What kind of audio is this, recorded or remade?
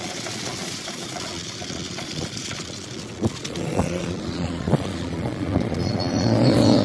remade